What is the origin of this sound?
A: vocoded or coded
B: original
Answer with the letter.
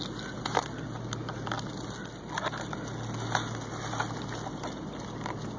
B